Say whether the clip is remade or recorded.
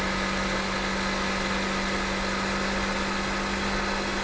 recorded